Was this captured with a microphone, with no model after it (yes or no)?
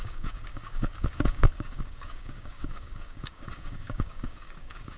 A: no